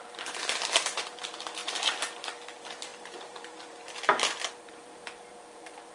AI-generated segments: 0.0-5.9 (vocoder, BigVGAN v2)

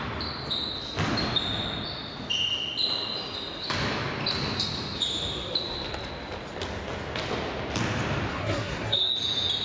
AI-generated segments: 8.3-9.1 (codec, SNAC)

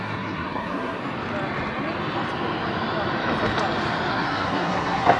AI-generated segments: 0.0-1.0 (codec, SNAC); 4.1-5.2

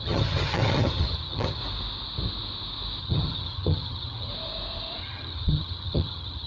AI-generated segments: 0.0-1.6 (vocoder, HiFi-GAN); 3.0-4.3; 5.0-6.5

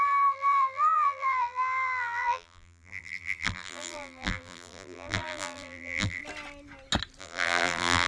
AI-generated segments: 0.0-6.2 (vocoder, BigVGAN v2); 7.2-8.1

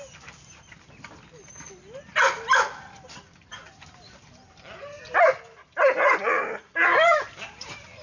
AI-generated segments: 0.0-8.0 (vocoder, BigVGAN v2)